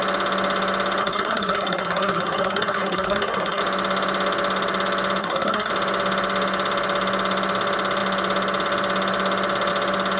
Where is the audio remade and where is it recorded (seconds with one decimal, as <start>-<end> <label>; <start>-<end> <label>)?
0.0-1.0 recorded; 1.0-3.6 remade; 3.6-5.2 recorded; 5.2-5.7 remade; 5.7-10.2 recorded